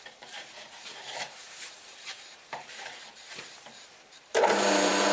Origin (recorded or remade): remade